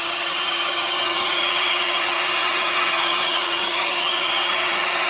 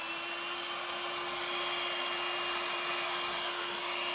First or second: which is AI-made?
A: first